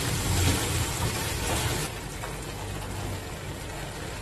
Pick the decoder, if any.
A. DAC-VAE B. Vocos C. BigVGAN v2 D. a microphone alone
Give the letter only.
D